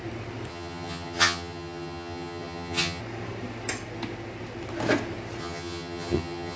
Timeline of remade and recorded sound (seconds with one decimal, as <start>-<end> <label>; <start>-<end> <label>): 0.0-0.5 recorded; 0.5-3.0 remade; 3.0-5.4 recorded; 5.4-6.6 remade